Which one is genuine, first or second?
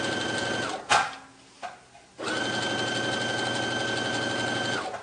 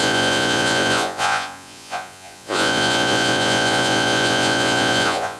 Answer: first